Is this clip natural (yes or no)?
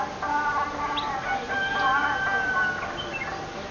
yes